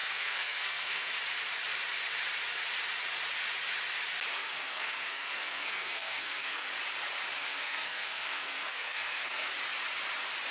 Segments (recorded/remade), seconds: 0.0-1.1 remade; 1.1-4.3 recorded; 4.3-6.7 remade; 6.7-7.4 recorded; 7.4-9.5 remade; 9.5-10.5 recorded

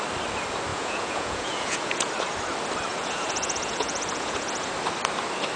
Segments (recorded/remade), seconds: 0.0-0.7 recorded; 0.7-2.1 remade; 2.1-2.9 recorded; 2.9-4.7 remade; 4.7-5.6 recorded

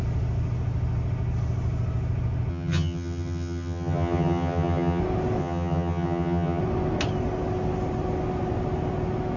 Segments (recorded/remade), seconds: 0.0-2.5 recorded; 2.5-5.0 remade; 5.0-5.4 recorded; 5.4-6.6 remade; 6.6-9.4 recorded

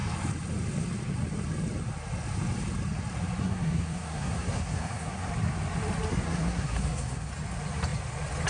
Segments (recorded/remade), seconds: 0.0-3.4 recorded; 3.4-5.3 remade; 5.3-6.1 recorded; 6.1-7.3 remade; 7.3-8.5 recorded